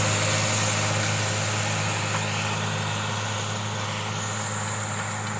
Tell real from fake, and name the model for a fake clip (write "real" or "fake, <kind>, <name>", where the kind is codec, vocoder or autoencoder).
real